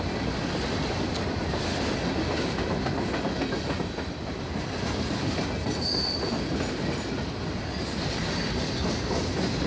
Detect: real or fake real